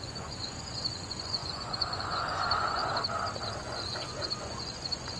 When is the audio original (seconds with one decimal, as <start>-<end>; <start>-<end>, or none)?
2.8-3.6